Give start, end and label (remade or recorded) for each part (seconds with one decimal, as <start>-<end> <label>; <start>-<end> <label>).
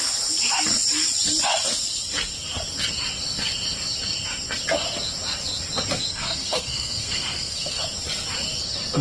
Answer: 0.0-6.1 recorded; 6.1-7.8 remade; 7.8-9.0 recorded